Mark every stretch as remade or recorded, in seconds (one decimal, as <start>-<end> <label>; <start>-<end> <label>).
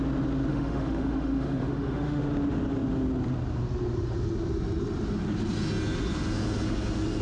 0.0-0.5 recorded; 0.5-2.2 remade; 2.2-7.2 recorded